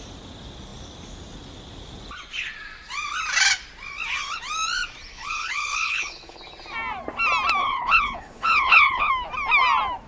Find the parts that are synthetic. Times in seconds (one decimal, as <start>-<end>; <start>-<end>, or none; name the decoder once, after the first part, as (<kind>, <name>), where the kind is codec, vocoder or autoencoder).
5.1-6.4 (codec, HILCodec); 7.6-9.1